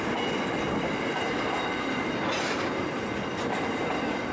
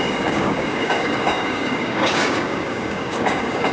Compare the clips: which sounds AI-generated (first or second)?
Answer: second